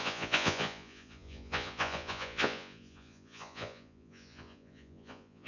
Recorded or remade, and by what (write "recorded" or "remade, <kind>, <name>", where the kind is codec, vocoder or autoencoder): remade, vocoder, Vocos